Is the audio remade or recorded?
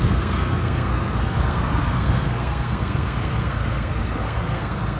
remade